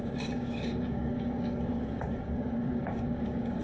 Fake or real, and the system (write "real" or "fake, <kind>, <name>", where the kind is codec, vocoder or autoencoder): fake, codec, DAC